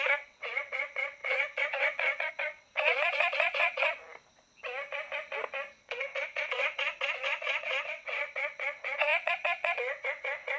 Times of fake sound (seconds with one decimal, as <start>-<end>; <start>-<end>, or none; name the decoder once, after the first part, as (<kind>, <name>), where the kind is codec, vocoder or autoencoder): 0.0-4.0 (vocoder, WaveNeXt); 5.8-10.6